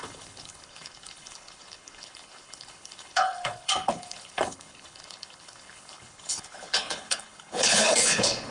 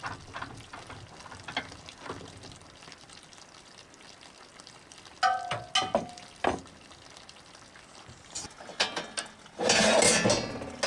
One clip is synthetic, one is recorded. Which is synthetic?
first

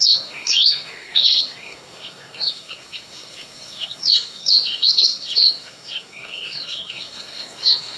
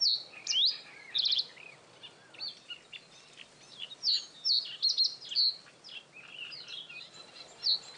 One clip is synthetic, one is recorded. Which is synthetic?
first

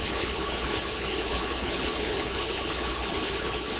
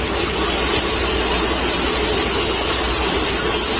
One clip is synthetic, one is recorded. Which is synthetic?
first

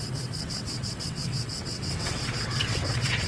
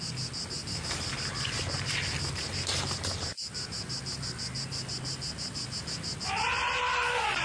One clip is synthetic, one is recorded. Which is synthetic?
first